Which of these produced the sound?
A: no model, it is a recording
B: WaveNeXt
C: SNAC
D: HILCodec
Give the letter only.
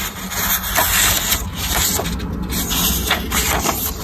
A